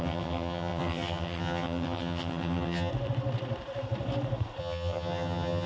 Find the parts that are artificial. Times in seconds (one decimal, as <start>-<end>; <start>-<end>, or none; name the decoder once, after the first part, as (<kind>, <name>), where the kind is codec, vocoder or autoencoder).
0.0-2.9 (vocoder, HiFi-GAN); 4.6-5.7